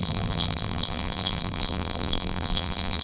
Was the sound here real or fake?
fake